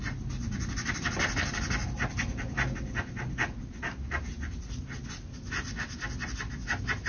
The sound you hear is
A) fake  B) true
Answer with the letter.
B